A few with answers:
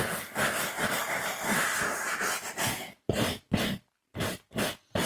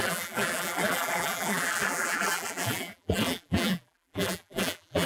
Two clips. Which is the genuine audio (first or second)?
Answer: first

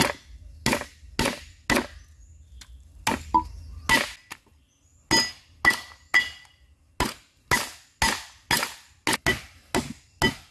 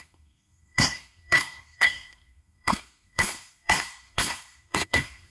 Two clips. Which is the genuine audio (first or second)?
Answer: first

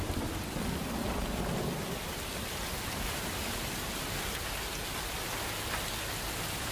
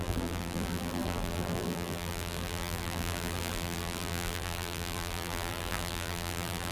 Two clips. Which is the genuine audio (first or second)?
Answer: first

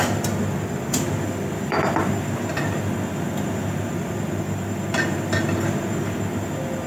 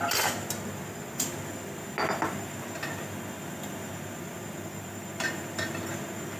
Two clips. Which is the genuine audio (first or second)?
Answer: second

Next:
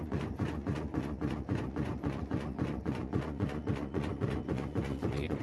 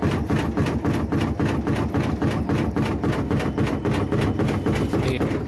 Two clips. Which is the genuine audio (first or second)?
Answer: second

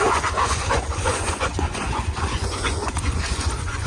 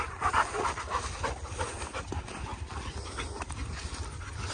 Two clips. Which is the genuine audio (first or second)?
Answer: second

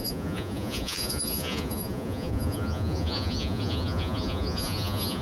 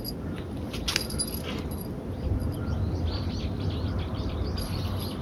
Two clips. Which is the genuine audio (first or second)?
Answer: second